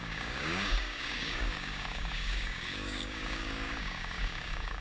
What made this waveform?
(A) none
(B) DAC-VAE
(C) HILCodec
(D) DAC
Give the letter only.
D